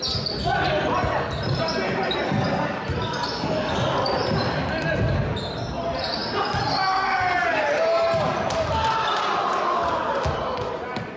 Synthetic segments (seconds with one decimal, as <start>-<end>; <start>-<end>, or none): none